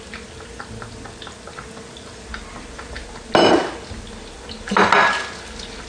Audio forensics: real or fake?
real